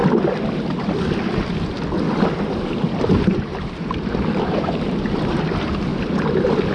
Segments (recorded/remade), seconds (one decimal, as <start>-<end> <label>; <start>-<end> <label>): 0.0-3.5 recorded; 3.5-5.2 remade; 5.2-6.7 recorded